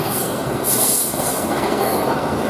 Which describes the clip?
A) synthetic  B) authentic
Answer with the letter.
A